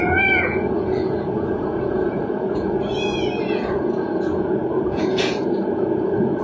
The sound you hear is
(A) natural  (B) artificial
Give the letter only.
B